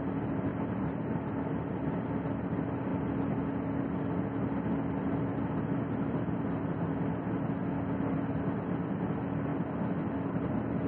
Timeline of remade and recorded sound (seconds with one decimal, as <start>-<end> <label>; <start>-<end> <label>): 0.0-10.9 recorded